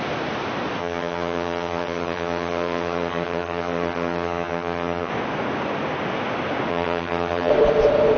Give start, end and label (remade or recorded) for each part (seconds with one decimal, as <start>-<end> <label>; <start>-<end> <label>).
0.0-0.8 recorded; 0.8-5.1 remade; 5.1-6.7 recorded; 6.7-7.5 remade; 7.5-8.2 recorded